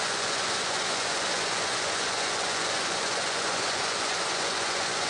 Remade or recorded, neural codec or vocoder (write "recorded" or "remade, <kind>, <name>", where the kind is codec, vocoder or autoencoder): remade, vocoder, Vocos